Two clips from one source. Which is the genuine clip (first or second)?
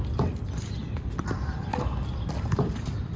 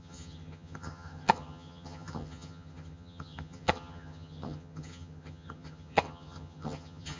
first